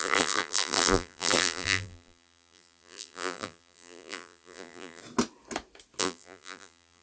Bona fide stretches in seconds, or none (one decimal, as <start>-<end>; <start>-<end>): 5.0-6.0